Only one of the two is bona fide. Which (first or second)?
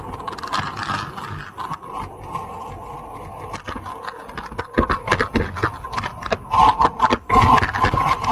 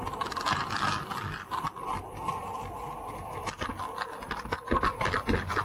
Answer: first